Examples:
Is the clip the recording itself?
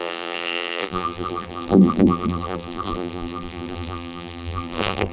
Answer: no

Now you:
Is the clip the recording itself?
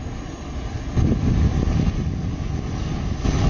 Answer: yes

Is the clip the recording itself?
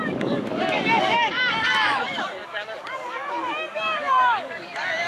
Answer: no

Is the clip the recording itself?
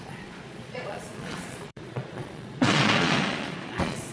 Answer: no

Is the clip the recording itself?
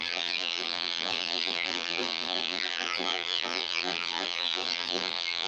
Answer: no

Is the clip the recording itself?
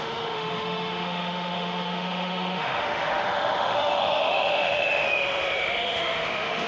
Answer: no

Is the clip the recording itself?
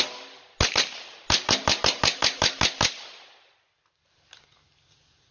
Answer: yes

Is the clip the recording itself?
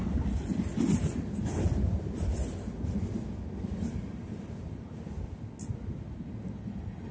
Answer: yes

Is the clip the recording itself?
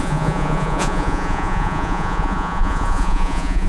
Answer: no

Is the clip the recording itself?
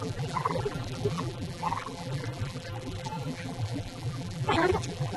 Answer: no